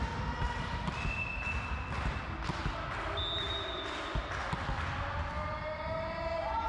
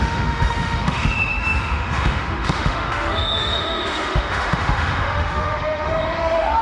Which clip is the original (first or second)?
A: first